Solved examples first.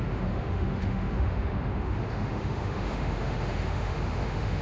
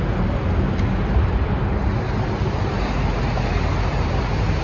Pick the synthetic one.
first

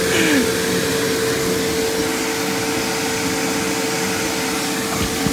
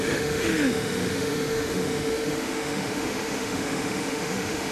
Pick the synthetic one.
second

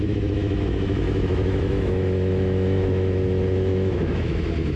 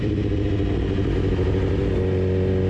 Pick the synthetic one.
first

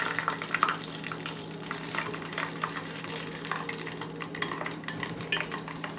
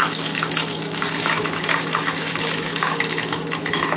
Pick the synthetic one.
second